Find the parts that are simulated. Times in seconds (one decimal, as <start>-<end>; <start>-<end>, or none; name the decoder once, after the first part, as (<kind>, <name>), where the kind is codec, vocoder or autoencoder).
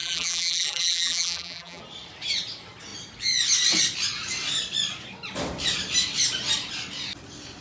0.0-1.8 (vocoder, BigVGAN v2)